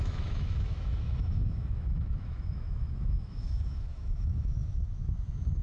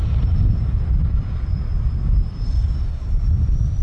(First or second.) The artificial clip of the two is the first